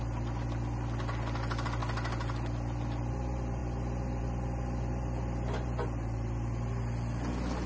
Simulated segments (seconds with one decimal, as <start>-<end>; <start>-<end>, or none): none